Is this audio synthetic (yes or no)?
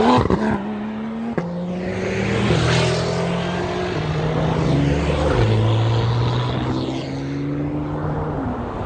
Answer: no